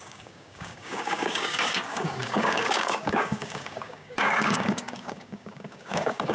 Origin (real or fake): fake